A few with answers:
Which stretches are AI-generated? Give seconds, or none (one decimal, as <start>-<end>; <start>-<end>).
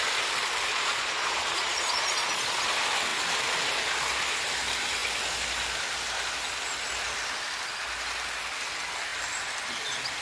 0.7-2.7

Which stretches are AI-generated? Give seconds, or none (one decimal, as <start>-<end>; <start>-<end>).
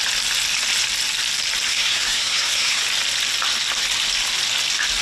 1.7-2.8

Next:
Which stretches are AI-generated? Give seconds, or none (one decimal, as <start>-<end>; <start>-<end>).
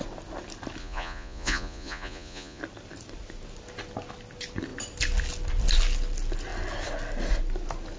0.8-2.6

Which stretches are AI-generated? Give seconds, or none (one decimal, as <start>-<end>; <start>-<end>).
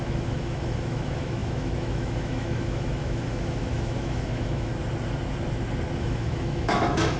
0.0-4.7; 6.0-7.2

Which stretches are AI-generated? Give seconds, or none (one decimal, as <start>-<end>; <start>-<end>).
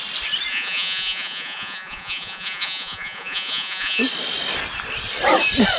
0.5-4.0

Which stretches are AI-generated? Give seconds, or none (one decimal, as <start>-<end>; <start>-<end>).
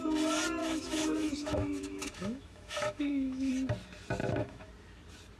0.6-3.5; 4.2-4.7